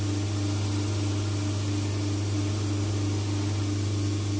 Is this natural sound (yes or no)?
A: yes